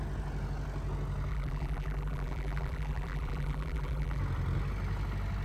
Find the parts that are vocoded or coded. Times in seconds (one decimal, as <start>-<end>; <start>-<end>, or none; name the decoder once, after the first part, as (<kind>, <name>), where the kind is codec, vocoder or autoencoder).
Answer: 1.3-4.2 (vocoder, BigVGAN v2)